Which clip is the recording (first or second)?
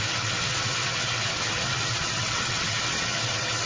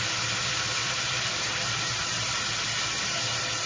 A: second